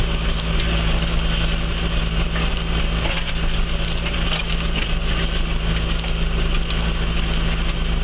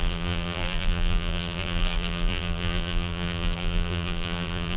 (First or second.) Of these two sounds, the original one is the first